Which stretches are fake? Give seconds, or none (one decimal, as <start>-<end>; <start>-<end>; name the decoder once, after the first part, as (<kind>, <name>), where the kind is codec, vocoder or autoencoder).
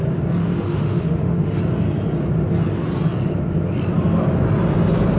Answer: 0.4-1.6 (autoencoder, DAC-VAE)